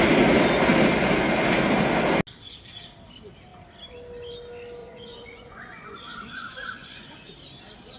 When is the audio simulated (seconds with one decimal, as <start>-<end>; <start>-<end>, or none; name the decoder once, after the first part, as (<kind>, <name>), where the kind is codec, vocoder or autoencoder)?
4.8-7.3 (vocoder, Vocos)